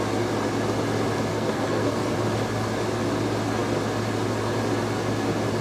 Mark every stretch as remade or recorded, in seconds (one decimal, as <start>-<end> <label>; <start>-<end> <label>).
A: 0.0-1.3 recorded; 1.3-2.1 remade; 2.1-5.6 recorded